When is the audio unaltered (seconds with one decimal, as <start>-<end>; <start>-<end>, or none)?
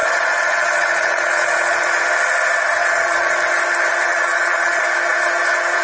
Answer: 2.0-2.8; 3.4-4.1; 4.8-5.8